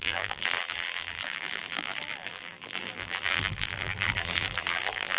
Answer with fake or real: fake